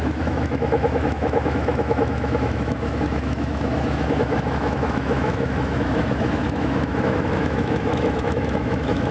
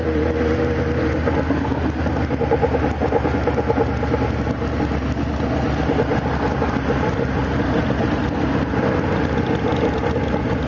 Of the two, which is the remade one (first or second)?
first